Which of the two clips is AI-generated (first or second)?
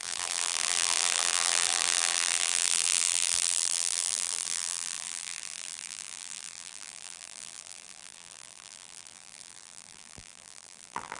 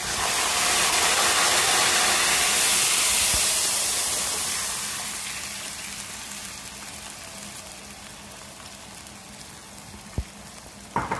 first